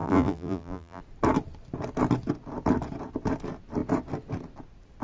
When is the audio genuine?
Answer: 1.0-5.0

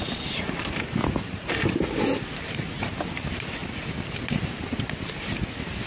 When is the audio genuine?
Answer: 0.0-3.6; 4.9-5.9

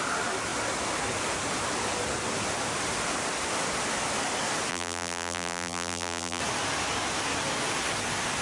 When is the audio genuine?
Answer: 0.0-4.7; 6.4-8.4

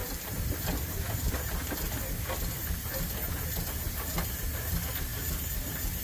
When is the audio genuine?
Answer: 0.0-6.0

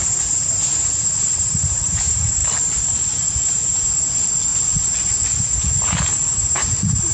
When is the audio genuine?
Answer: 4.5-5.4

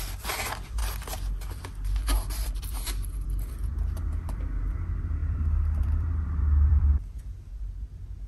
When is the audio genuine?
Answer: 0.8-2.6; 6.9-7.5

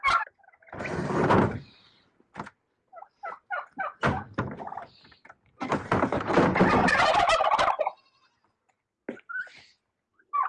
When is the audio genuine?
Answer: 0.0-6.8; 7.3-10.5

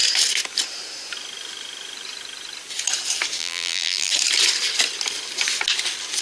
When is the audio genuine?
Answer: 0.0-3.4; 4.1-6.2